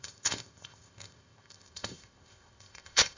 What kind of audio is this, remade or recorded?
remade